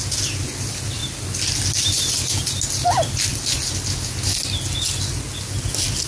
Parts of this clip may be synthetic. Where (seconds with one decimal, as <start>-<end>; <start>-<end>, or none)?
none